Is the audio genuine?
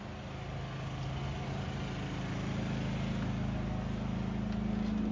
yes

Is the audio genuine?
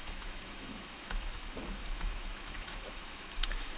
no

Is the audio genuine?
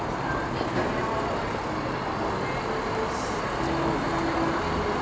yes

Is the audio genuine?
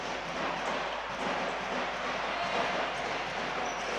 yes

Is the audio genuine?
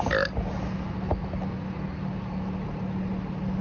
yes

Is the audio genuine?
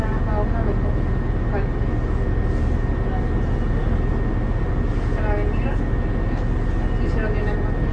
yes